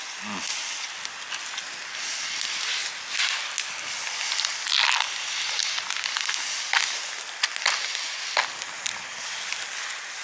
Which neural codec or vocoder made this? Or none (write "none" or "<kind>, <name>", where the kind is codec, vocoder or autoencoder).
none